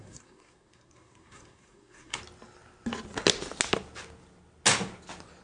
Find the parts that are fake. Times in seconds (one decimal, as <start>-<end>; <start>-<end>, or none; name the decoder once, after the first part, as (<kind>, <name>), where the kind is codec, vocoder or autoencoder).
0.0-2.2 (codec, SNAC)